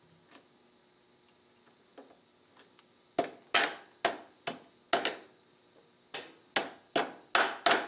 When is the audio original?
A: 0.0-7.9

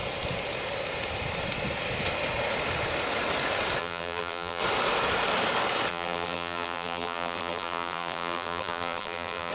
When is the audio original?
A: 0.0-3.8; 4.6-5.9

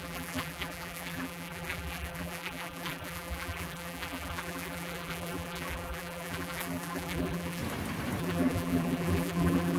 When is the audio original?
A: 7.6-8.2

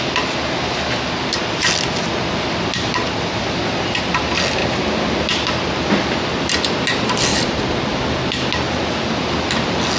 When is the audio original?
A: 0.0-1.4; 2.3-7.3; 8.0-10.0

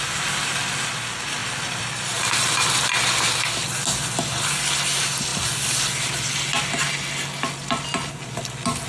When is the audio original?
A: 0.0-1.4; 2.5-8.9